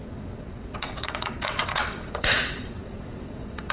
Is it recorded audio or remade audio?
remade